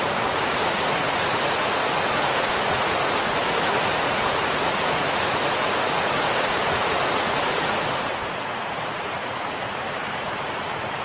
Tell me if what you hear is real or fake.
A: fake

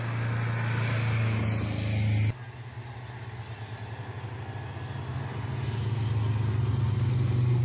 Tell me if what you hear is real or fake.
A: real